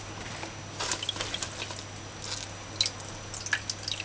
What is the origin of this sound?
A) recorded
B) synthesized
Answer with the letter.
A